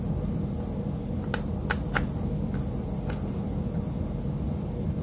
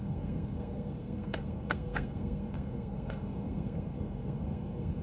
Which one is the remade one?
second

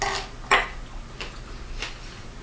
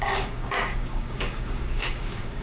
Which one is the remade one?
second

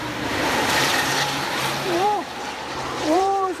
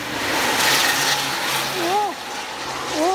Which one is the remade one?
first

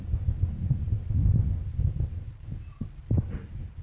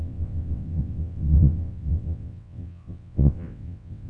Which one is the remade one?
second